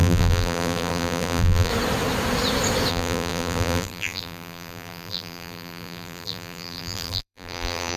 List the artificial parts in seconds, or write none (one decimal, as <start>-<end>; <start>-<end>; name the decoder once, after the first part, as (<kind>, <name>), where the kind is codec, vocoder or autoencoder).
0.0-1.7 (vocoder, BigVGAN v2); 2.9-8.0